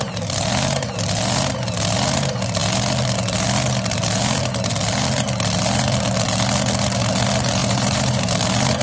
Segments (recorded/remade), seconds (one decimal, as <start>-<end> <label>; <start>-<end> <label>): 0.0-7.6 recorded; 7.6-8.3 remade; 8.3-8.8 recorded